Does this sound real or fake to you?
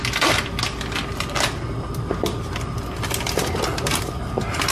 real